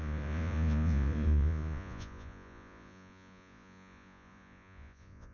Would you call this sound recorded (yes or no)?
no